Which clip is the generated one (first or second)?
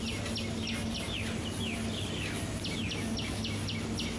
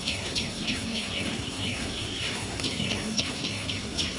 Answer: second